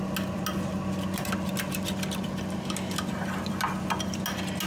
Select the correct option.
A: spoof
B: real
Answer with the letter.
B